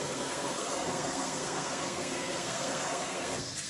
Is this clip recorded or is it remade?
remade